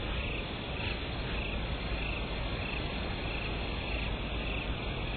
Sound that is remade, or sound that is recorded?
recorded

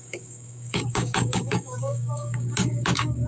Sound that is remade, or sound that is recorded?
remade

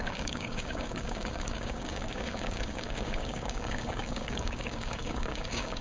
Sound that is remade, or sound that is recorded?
remade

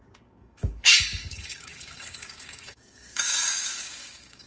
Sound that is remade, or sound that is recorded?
remade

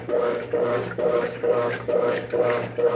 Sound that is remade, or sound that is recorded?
remade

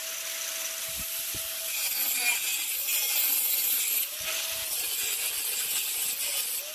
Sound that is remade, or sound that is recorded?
recorded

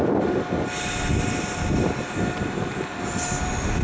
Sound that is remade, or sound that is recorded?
recorded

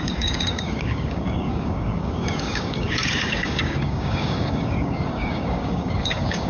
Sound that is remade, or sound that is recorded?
remade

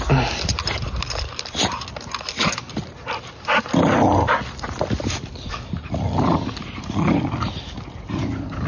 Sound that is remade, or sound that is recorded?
recorded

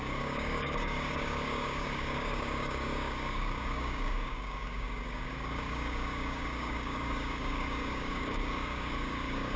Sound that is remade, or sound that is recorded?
remade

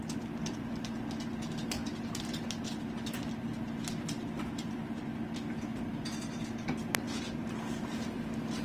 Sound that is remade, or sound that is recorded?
recorded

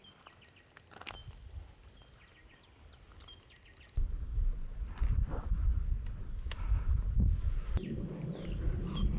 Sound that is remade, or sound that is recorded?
recorded